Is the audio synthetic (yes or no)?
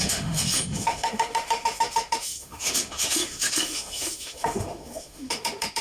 yes